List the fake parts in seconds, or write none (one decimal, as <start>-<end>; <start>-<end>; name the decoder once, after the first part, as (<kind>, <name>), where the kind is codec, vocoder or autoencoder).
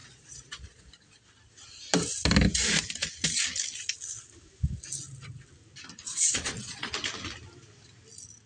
0.0-1.2 (vocoder, Vocos); 6.1-6.9